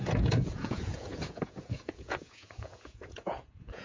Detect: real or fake fake